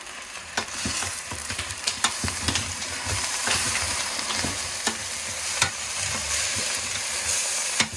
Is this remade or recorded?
remade